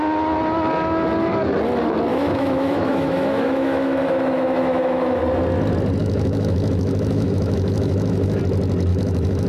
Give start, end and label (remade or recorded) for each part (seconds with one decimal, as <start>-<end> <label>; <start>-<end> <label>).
0.0-2.1 recorded; 2.1-5.2 remade; 5.2-6.0 recorded; 6.0-8.4 remade; 8.4-8.9 recorded; 8.9-9.5 remade